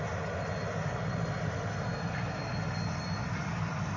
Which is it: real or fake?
real